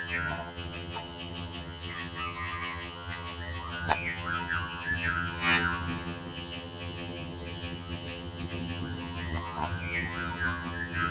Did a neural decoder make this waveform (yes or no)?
yes